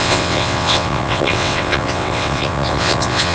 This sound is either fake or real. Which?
fake